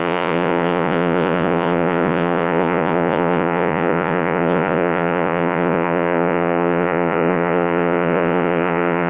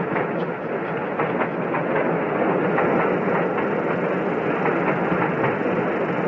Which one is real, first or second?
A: second